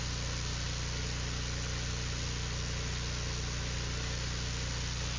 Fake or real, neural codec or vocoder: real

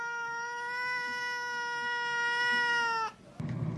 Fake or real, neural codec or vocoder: real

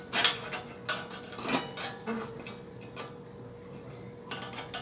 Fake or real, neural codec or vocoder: real